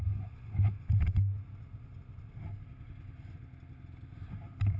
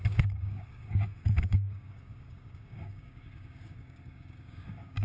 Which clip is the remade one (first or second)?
second